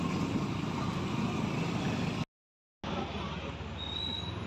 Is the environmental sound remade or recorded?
recorded